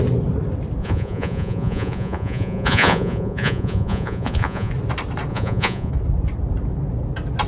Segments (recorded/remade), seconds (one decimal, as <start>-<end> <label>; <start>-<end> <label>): 0.0-0.8 recorded; 0.8-4.7 remade; 4.7-5.3 recorded; 5.3-5.9 remade; 5.9-7.5 recorded